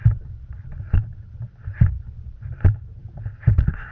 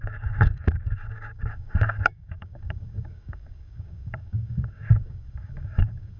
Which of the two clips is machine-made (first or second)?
second